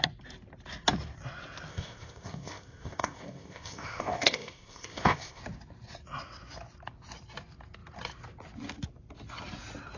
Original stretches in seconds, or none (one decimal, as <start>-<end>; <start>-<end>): 0.0-1.7; 5.4-10.0